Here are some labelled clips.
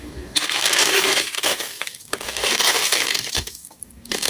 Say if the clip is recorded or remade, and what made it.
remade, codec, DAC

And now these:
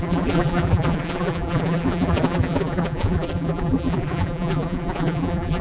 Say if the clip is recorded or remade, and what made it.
remade, vocoder, BigVGAN v2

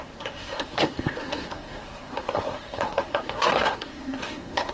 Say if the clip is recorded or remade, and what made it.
remade, codec, SNAC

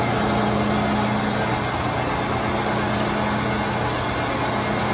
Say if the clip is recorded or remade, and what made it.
recorded